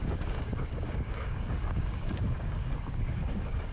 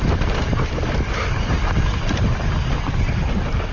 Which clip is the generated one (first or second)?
first